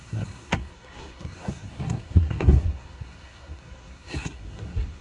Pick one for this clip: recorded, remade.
remade